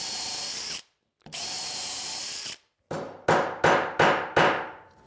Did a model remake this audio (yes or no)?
no